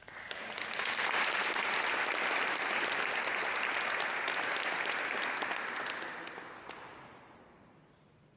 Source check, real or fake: real